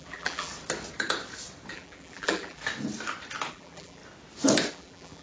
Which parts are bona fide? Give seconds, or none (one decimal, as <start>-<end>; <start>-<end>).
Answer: 0.5-1.7; 2.6-3.5; 4.0-4.7